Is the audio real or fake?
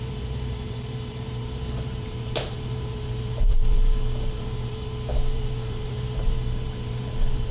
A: fake